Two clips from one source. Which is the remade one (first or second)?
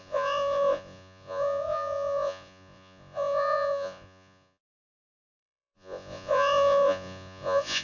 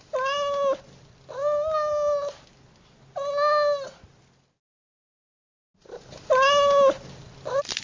first